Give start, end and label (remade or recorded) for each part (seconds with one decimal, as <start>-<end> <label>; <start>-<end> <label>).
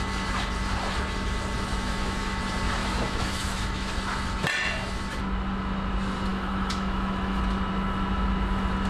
0.0-1.7 recorded; 1.7-2.4 remade; 2.4-2.8 recorded; 2.8-3.9 remade; 3.9-6.3 recorded; 6.3-7.4 remade; 7.4-8.9 recorded